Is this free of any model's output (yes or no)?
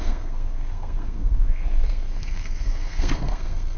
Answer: no